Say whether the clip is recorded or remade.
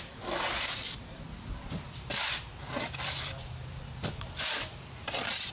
remade